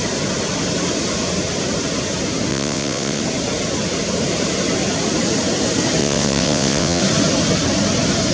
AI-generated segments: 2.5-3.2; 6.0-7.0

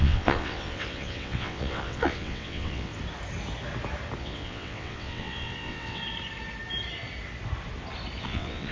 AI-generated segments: 0.0-2.9; 4.2-6.0; 8.2-8.7

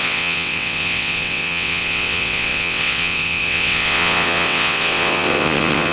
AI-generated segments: 0.0-5.9

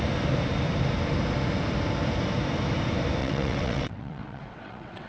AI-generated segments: 3.2-5.1

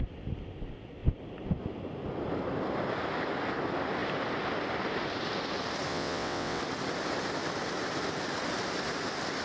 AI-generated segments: 5.9-6.6

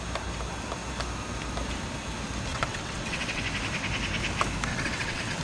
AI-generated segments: 2.5-3.4; 4.7-5.4

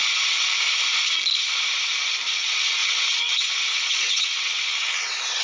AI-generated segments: 2.3-5.4

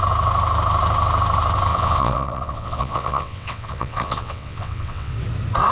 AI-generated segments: 1.7-5.1